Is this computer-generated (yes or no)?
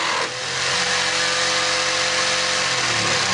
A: no